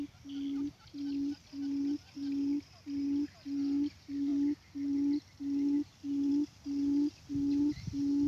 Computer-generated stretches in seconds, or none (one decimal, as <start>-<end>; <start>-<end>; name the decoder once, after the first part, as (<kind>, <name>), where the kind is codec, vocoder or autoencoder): none